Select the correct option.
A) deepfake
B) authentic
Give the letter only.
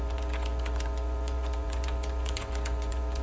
A